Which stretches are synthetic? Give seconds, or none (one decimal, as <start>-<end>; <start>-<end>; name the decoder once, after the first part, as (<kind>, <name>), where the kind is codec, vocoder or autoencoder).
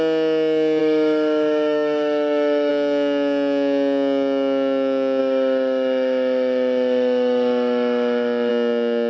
0.8-2.7 (autoencoder, DAC-VAE); 5.2-8.5